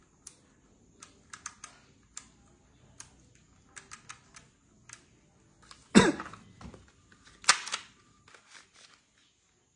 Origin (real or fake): real